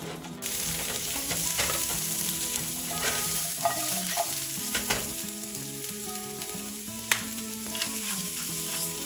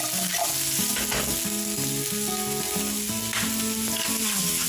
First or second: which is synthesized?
first